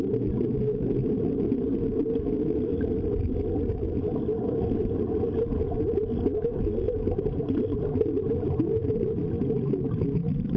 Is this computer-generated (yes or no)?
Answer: no